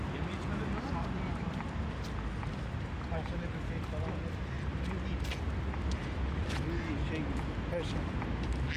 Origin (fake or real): real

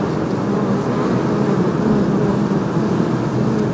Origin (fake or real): real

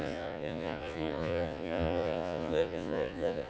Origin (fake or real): fake